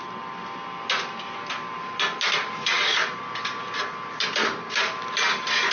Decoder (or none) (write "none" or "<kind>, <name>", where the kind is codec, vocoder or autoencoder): none